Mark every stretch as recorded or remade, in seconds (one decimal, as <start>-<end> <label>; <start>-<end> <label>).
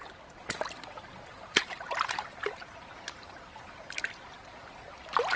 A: 0.0-1.3 recorded; 1.3-2.4 remade; 2.4-5.4 recorded